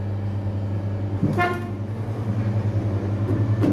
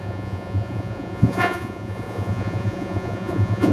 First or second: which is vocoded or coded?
second